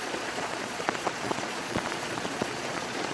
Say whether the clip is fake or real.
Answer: fake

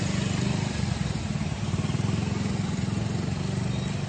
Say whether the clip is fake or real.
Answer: real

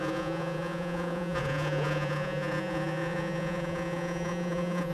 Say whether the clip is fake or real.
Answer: fake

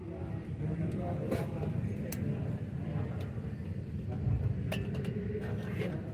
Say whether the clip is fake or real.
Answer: real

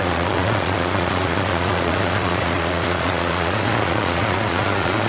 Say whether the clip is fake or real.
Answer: fake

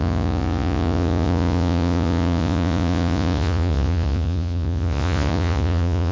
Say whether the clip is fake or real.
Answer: fake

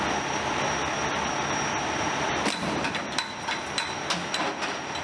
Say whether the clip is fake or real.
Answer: real